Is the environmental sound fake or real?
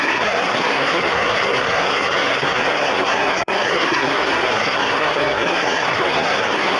fake